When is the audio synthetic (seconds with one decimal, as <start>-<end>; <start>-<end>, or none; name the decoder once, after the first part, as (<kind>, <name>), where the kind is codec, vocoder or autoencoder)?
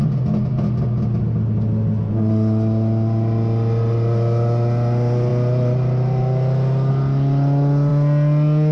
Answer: none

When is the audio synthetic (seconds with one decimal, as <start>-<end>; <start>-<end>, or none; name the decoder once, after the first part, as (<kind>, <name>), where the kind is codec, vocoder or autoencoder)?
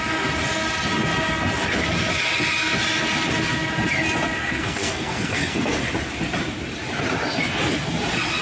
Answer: 4.4-5.8 (codec, SNAC)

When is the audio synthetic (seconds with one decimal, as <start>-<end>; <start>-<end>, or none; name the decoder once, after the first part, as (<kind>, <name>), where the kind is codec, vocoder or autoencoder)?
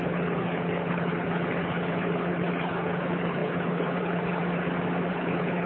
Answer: 0.0-4.4 (codec, HILCodec); 5.1-5.7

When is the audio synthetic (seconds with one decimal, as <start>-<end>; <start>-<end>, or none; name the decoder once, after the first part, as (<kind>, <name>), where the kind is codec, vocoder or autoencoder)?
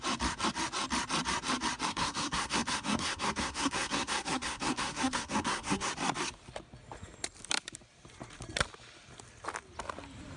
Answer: 1.9-5.9 (codec, SNAC)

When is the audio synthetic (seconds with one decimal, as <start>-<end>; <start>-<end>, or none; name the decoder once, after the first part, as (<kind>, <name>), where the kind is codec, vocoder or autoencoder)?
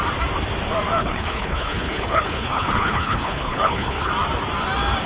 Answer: 1.0-4.1 (codec, HILCodec)